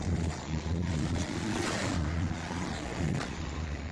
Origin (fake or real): fake